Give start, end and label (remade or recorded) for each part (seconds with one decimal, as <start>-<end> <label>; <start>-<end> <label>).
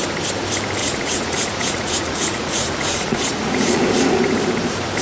0.0-0.8 recorded; 0.8-3.8 remade; 3.8-5.0 recorded